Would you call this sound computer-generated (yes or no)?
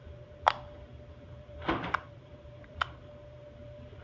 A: yes